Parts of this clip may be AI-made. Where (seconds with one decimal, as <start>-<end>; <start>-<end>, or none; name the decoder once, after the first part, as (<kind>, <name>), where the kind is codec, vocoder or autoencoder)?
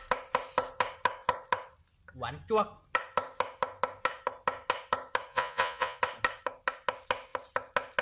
5.3-6.0 (vocoder, Vocos)